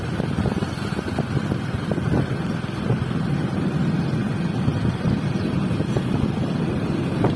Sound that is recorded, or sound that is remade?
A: recorded